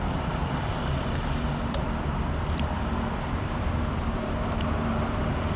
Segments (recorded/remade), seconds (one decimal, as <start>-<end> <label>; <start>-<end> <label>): 0.0-0.4 recorded; 0.4-3.8 remade; 3.8-5.6 recorded